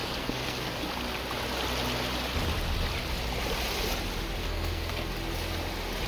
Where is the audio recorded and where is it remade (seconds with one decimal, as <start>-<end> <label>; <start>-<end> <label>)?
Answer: 0.0-0.7 remade; 0.7-4.4 recorded; 4.4-5.1 remade; 5.1-6.1 recorded